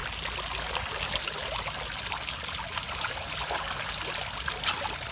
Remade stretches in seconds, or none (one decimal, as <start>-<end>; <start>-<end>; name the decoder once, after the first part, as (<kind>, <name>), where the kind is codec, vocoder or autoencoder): none